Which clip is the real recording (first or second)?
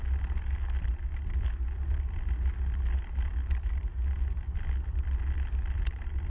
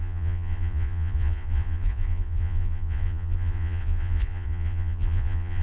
first